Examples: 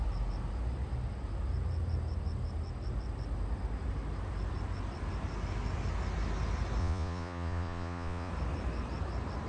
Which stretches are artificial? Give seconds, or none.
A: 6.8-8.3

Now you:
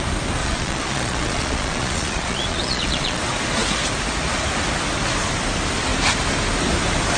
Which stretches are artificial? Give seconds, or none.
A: 0.4-3.2

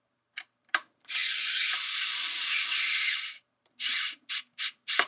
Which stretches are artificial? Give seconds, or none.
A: 0.0-5.1

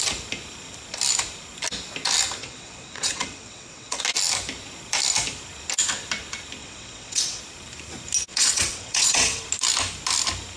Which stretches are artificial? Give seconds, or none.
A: 2.4-4.0; 6.6-7.4; 8.3-9.4